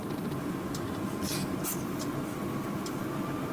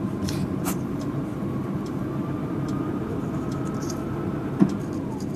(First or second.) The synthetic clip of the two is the second